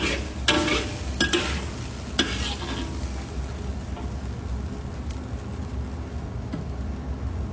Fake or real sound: real